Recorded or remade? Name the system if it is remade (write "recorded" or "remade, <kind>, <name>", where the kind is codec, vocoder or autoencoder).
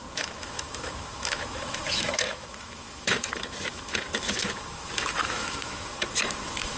remade, autoencoder, DAC-VAE